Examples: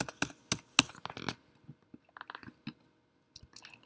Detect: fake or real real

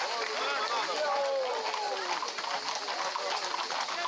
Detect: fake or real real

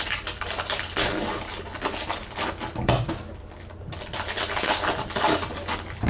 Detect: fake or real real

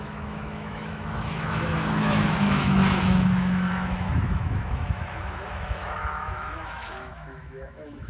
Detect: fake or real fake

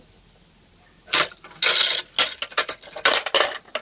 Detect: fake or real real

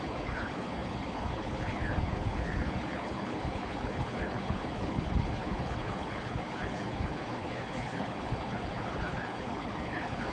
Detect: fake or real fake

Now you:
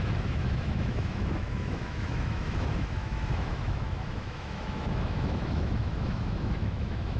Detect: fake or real fake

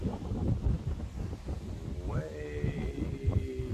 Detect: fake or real real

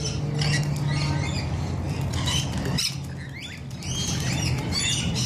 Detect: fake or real real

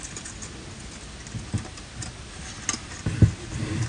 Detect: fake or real real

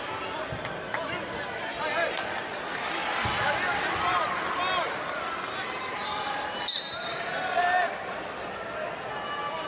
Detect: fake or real real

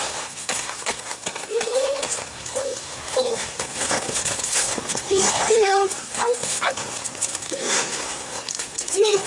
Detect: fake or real fake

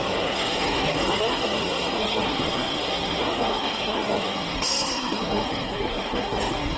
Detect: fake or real fake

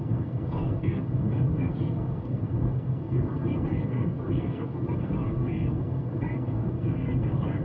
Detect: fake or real fake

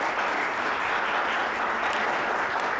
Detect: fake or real real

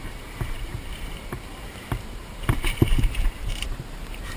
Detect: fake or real fake